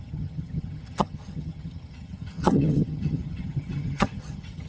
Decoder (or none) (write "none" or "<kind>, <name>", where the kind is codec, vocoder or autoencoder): vocoder, HiFi-GAN